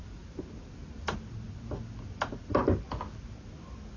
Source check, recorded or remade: recorded